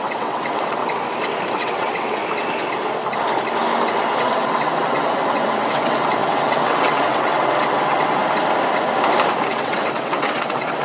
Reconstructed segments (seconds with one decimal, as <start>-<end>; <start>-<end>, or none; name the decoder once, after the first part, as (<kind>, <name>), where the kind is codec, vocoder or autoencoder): 0.0-0.8 (vocoder, WaveNeXt); 1.5-2.2; 4.2-8.2; 9.5-10.8

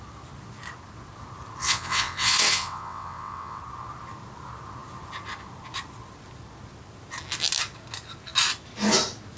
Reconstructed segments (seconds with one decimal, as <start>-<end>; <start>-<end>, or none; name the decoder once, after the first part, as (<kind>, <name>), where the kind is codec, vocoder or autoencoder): 1.6-3.6 (vocoder, WaveNeXt)

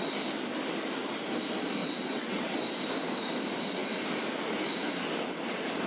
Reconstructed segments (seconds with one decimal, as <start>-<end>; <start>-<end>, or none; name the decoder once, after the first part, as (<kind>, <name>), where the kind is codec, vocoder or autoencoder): 1.8-2.6 (vocoder, WaveNeXt)

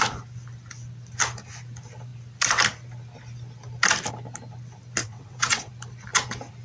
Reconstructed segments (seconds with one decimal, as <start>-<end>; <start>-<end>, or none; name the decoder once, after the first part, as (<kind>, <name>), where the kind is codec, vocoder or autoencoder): 5.0-5.7 (vocoder, WaveNeXt)

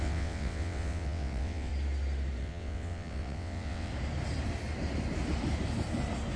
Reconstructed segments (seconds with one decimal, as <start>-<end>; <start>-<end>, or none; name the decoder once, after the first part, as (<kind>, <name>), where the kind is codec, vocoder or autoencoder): 0.0-1.7 (vocoder, WaveNeXt); 2.4-3.9

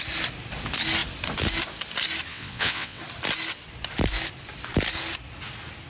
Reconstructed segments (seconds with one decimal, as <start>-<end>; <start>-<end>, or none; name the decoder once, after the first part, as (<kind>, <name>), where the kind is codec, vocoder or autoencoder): 2.3-3.0 (vocoder, WaveNeXt)